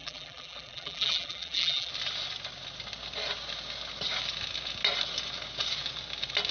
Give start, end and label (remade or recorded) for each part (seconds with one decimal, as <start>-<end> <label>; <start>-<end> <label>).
0.0-1.9 remade; 1.9-6.5 recorded